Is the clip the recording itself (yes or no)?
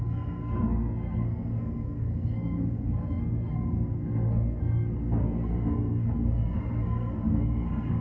no